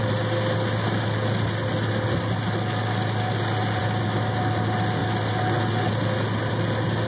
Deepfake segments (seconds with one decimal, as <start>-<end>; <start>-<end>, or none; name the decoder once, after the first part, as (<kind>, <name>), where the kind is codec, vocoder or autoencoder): none